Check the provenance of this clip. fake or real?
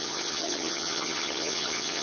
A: fake